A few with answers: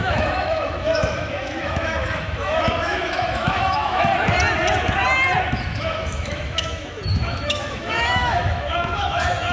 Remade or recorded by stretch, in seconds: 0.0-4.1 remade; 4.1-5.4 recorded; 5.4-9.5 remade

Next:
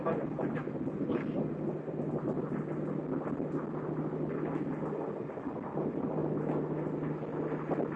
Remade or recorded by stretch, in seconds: 0.0-0.6 remade; 0.6-5.4 recorded; 5.4-6.2 remade; 6.2-8.0 recorded

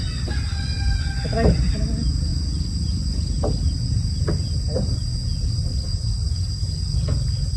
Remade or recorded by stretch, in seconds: 0.0-7.6 recorded